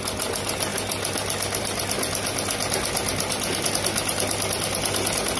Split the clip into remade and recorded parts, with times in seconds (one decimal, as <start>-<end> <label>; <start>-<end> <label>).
0.0-5.4 recorded